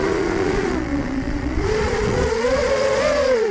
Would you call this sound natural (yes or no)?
no